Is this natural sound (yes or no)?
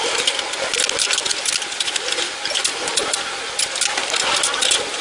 yes